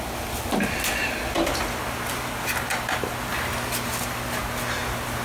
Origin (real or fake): real